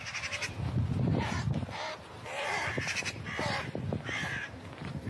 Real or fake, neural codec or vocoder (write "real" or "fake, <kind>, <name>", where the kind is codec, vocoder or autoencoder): fake, vocoder, BigVGAN v2